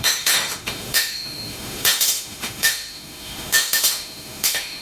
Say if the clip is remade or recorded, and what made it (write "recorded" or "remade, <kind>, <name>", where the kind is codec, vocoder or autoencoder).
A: remade, autoencoder, DAC-VAE